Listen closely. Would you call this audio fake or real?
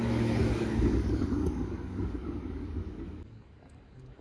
fake